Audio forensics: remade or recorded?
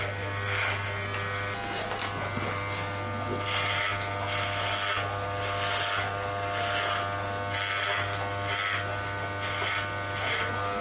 recorded